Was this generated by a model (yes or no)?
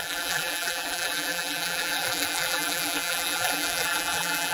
yes